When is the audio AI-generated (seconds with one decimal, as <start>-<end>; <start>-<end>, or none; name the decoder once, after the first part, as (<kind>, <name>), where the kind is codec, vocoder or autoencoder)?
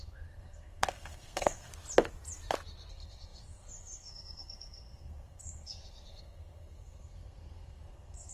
0.0-1.7 (codec, SNAC); 2.9-8.3